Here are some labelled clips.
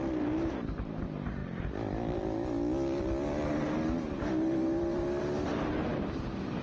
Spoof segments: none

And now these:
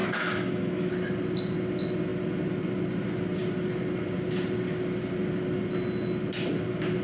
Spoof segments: 0.0-0.9 (autoencoder, DAC-VAE)

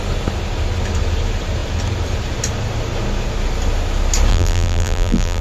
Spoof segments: 4.3-5.4 (vocoder, BigVGAN v2)

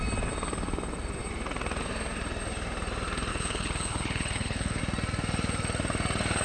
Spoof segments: 3.3-4.8 (codec, HILCodec)